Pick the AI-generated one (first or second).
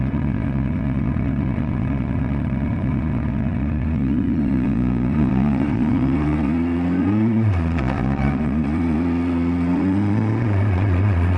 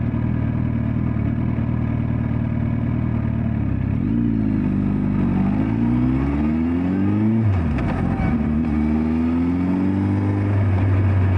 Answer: first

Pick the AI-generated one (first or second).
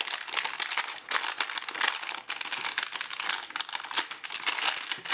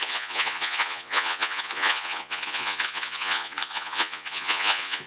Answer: second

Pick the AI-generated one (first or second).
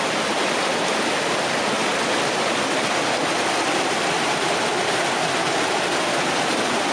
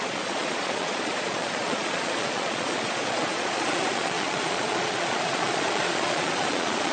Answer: second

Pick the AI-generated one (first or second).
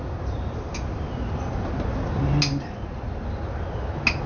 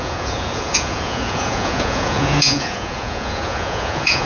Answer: second